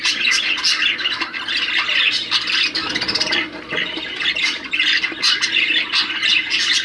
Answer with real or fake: real